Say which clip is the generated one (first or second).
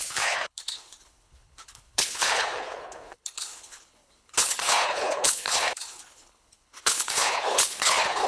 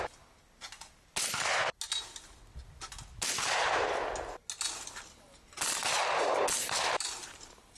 first